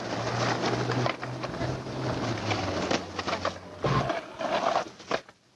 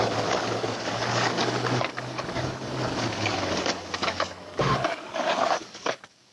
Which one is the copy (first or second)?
second